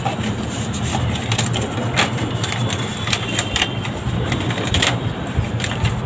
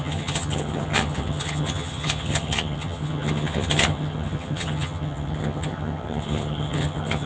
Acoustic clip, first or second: first